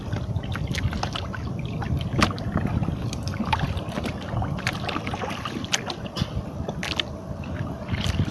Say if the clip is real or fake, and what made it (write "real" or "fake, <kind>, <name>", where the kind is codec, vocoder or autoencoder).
real